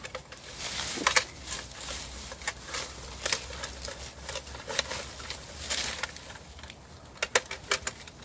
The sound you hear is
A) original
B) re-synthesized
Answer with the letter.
A